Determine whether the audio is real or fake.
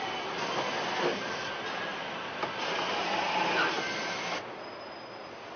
real